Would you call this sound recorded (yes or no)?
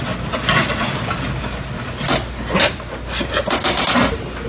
yes